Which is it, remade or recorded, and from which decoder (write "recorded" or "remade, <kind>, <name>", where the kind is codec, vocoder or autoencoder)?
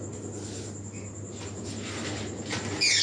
recorded